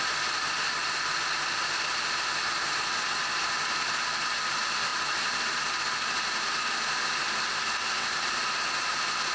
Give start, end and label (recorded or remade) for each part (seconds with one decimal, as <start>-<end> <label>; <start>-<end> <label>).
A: 0.0-9.3 recorded